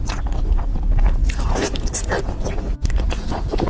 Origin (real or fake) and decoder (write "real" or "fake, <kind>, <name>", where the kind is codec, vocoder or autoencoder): real